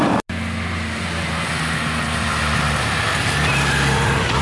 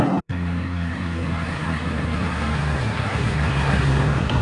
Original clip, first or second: first